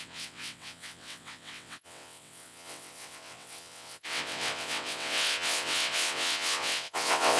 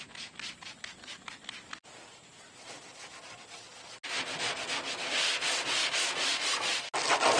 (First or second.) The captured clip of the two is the second